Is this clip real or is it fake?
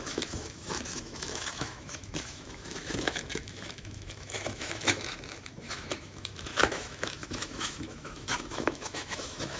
fake